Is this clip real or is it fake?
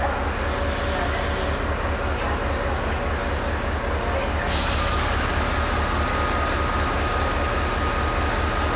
real